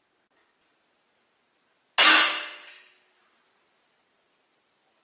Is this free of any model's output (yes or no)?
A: yes